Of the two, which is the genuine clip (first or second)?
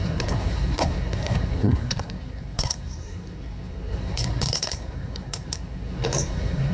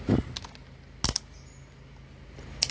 second